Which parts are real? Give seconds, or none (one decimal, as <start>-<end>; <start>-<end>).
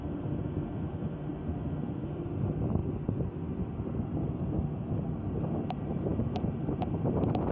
0.0-7.5